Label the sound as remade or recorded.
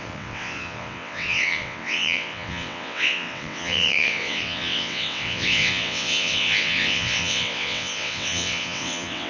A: remade